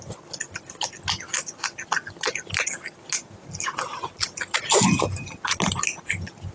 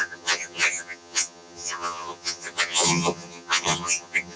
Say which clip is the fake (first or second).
second